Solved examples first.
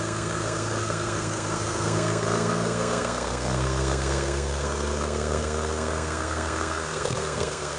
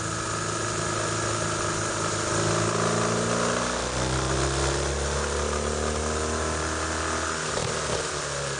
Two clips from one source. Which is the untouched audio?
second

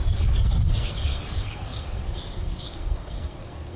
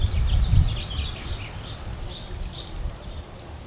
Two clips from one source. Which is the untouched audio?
second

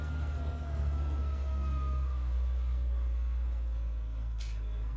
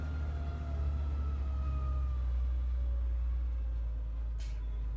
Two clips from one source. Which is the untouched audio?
second